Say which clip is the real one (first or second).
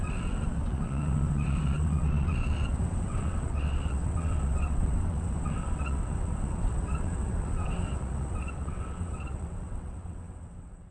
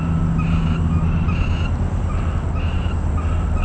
second